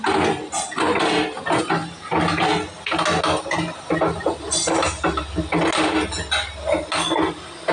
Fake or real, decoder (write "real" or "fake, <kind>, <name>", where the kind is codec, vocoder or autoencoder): real